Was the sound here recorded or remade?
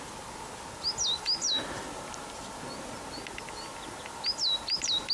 recorded